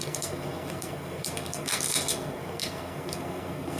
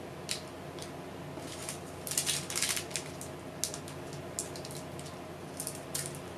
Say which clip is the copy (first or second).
first